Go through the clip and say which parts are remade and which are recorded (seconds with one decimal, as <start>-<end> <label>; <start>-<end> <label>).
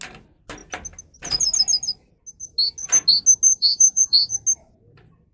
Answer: 0.0-3.5 recorded; 3.5-4.3 remade; 4.3-5.3 recorded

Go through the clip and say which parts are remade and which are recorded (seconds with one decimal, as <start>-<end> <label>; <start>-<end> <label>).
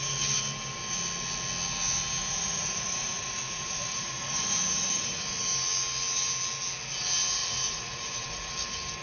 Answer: 0.0-2.2 recorded; 2.2-5.4 remade; 5.4-7.4 recorded; 7.4-8.5 remade; 8.5-9.0 recorded